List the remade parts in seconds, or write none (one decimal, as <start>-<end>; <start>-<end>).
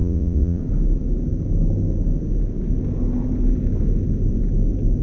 0.0-0.6